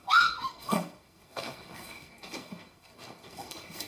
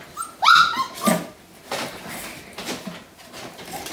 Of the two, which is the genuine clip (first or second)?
second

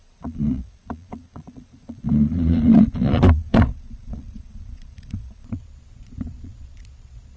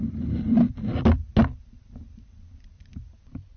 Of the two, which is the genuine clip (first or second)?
second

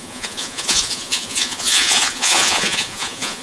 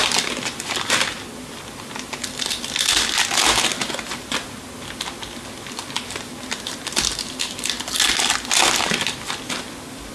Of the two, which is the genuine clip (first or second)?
second